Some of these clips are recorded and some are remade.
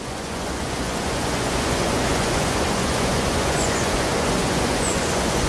remade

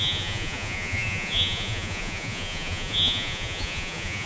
remade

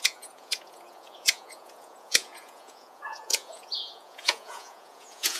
remade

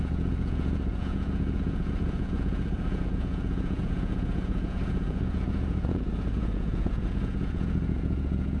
remade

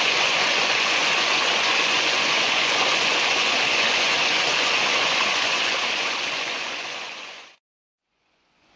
remade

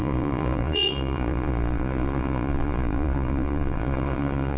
remade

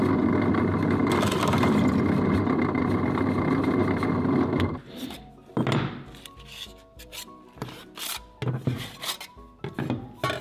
recorded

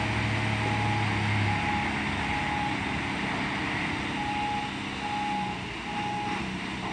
recorded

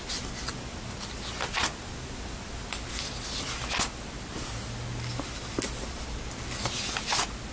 recorded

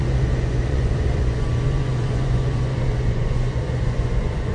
remade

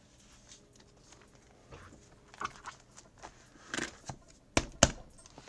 recorded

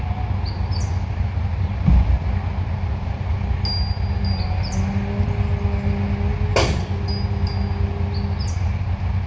recorded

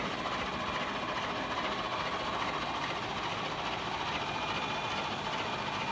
recorded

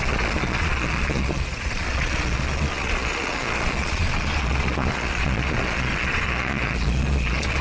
remade